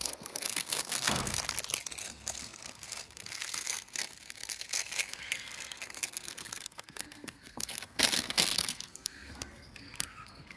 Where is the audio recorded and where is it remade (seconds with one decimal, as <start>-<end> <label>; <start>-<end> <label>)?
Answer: 0.0-1.4 remade; 1.4-2.0 recorded; 2.0-10.6 remade